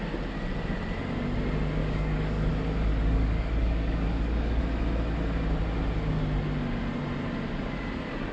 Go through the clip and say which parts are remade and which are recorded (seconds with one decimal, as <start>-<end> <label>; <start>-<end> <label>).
0.0-1.8 recorded; 1.8-2.5 remade; 2.5-2.9 recorded; 2.9-4.6 remade; 4.6-8.3 recorded